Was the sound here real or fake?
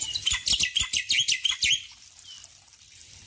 real